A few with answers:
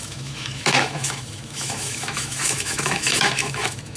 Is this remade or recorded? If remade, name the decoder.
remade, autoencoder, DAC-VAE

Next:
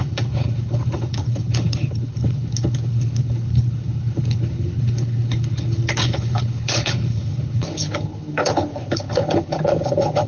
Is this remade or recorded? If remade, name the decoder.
remade, codec, HILCodec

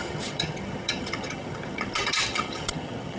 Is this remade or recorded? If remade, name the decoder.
remade, vocoder, HiFi-GAN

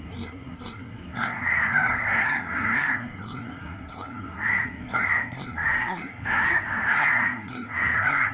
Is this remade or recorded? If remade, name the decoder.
remade, codec, SNAC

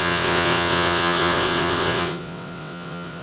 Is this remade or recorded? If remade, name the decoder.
remade, vocoder, WaveNeXt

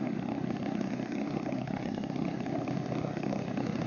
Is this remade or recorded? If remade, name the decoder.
remade, codec, SNAC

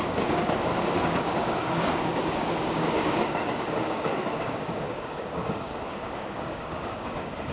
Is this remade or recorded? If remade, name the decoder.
remade, codec, DAC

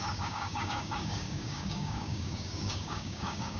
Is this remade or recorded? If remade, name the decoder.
remade, codec, DAC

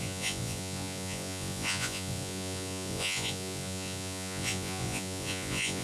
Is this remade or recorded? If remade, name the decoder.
remade, vocoder, Vocos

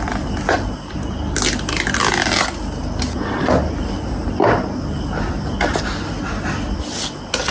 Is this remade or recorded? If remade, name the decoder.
recorded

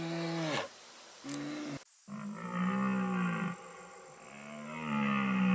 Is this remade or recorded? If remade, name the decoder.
recorded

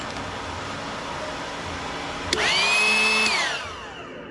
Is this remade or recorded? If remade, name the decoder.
recorded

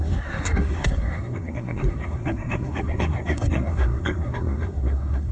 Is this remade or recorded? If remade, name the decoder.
remade, codec, SNAC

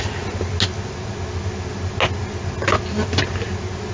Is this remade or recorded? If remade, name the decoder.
recorded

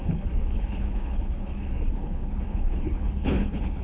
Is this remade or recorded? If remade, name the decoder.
remade, codec, HILCodec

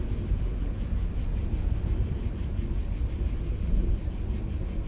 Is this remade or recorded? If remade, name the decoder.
recorded